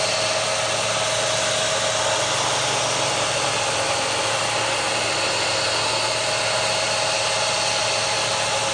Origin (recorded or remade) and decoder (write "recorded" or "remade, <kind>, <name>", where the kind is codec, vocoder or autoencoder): recorded